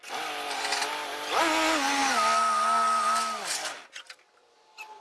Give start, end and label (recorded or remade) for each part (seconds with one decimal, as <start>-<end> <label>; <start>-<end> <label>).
0.0-5.0 recorded